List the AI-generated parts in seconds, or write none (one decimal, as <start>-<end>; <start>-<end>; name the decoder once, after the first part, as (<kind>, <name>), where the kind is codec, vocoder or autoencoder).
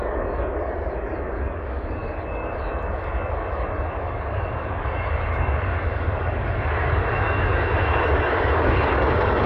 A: 0.0-9.5 (codec, DAC)